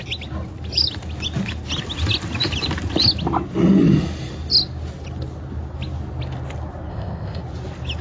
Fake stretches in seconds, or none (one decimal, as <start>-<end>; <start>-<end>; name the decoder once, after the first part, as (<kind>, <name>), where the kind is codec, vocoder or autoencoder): 6.9-7.4 (codec, ZipCodec)